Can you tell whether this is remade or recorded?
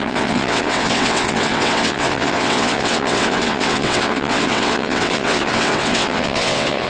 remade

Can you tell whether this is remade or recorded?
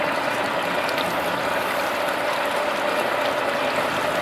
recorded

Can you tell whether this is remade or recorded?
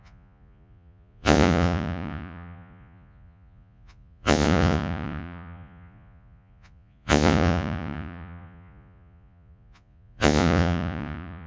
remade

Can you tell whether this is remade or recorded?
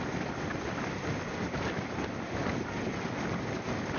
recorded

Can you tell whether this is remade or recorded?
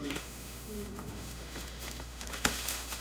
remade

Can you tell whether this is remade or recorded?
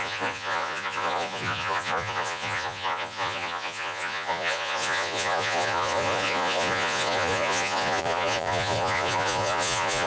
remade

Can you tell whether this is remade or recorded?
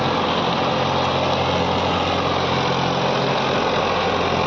recorded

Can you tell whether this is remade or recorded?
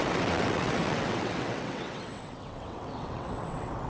remade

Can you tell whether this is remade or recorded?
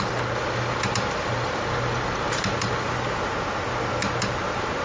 recorded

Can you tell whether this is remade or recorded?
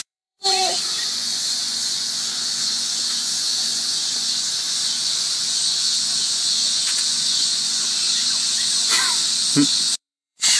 remade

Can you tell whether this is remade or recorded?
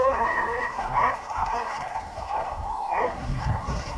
remade